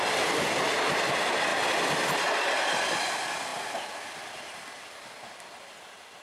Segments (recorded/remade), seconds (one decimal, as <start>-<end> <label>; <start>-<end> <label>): 0.0-6.2 recorded